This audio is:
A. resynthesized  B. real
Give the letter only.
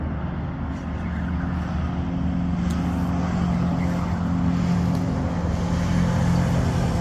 B